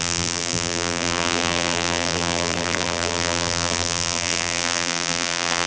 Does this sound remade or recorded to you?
remade